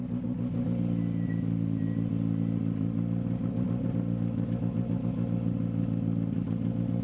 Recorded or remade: recorded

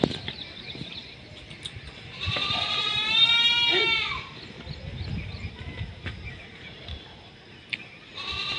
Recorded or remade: recorded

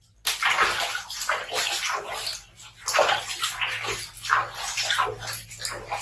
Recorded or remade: recorded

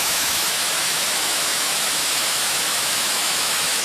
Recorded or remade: remade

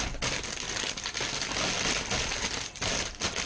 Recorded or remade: recorded